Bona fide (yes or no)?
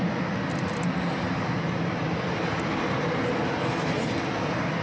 yes